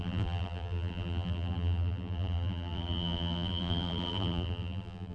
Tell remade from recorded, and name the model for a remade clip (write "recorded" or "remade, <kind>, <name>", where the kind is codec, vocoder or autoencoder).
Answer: remade, vocoder, BigVGAN v2